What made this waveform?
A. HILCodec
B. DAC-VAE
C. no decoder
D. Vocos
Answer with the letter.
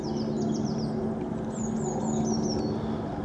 C